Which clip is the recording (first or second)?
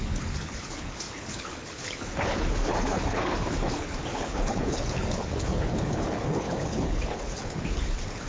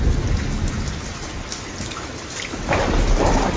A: second